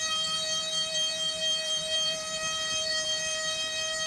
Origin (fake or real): fake